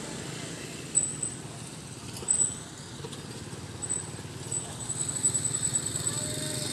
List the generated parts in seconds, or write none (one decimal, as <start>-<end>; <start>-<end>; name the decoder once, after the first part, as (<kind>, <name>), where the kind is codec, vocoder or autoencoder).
none